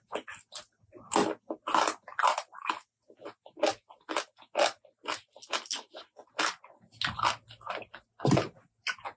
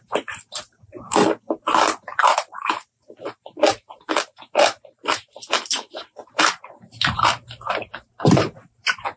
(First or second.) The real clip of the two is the first